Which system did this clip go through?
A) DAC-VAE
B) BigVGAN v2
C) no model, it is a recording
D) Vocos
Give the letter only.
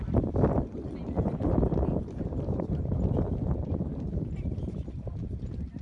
B